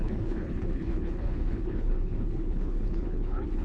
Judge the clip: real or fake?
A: fake